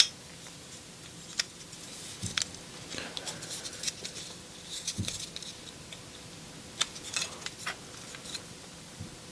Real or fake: real